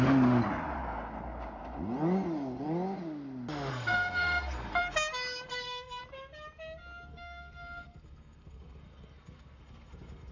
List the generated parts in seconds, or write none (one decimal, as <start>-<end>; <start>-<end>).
3.7-4.8; 5.5-6.0; 7.1-10.3